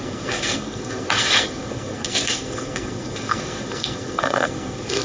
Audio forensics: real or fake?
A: fake